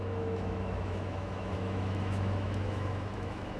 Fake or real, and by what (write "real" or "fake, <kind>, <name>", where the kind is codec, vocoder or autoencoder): fake, autoencoder, DAC-VAE